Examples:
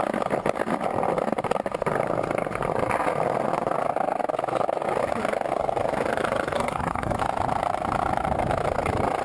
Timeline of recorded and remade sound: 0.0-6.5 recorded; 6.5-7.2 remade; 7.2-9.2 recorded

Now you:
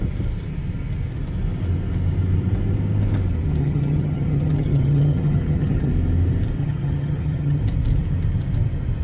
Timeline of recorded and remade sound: 0.0-3.6 recorded; 3.6-5.9 remade; 5.9-6.6 recorded; 6.6-7.6 remade; 7.6-9.0 recorded

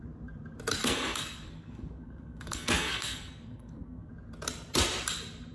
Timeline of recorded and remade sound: 0.0-0.8 recorded; 0.8-4.1 remade; 4.1-5.5 recorded

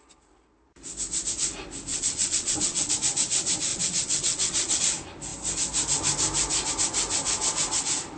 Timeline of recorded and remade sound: 0.0-1.9 recorded; 1.9-2.9 remade; 2.9-3.7 recorded; 3.7-4.8 remade; 4.8-8.2 recorded

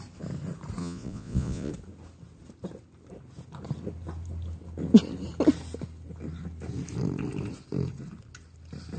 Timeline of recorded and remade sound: 0.0-0.8 recorded; 0.8-1.7 remade; 1.7-9.0 recorded

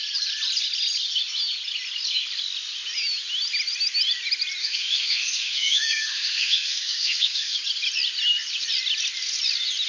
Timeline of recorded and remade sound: 0.0-4.6 recorded; 4.6-7.6 remade; 7.6-9.9 recorded

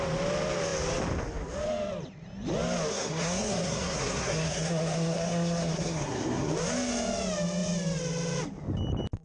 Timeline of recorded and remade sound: 0.0-2.9 recorded; 2.9-6.5 remade; 6.5-9.2 recorded